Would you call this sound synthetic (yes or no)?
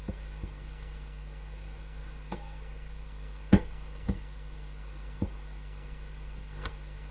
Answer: yes